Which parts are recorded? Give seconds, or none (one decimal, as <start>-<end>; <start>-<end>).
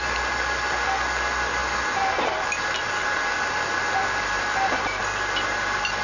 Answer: 0.0-1.6; 5.0-6.0